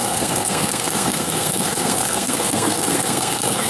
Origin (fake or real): fake